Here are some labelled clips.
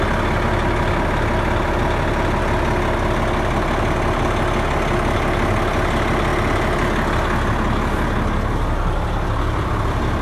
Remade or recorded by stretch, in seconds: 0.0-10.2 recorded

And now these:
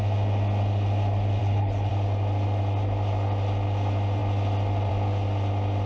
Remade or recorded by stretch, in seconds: 0.0-1.4 recorded; 1.4-1.9 remade; 1.9-5.9 recorded

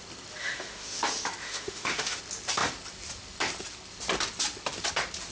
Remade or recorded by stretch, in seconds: 0.0-0.4 recorded; 0.4-1.0 remade; 1.0-1.4 recorded; 1.4-2.2 remade; 2.2-5.3 recorded

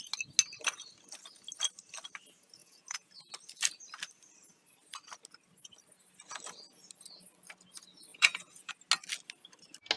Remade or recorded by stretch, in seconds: 0.0-2.6 recorded; 2.6-3.1 remade; 3.1-8.1 recorded; 8.1-8.7 remade; 8.7-10.0 recorded